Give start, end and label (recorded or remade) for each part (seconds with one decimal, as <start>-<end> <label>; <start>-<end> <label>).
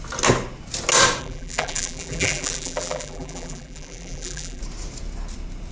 0.0-1.2 recorded; 1.2-4.6 remade; 4.6-5.7 recorded